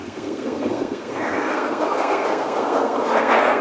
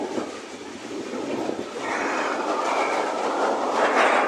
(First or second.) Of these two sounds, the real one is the second